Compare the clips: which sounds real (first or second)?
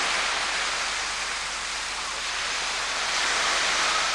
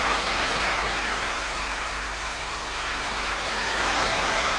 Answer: first